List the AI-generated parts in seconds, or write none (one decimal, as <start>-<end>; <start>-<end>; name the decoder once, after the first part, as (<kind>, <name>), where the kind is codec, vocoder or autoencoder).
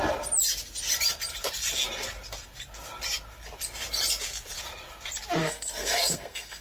5.4-6.6 (codec, SNAC)